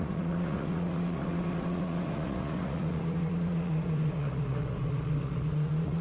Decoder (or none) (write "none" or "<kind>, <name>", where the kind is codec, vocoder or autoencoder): vocoder, Vocos